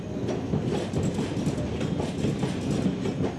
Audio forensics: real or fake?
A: real